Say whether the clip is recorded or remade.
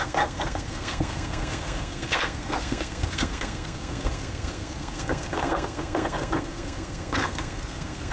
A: remade